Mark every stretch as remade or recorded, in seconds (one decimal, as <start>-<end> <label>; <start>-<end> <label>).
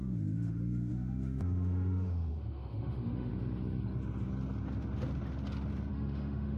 0.0-3.3 remade; 3.3-5.9 recorded; 5.9-6.6 remade